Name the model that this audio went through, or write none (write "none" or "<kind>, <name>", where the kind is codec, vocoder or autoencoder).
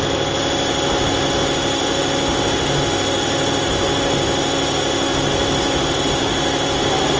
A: none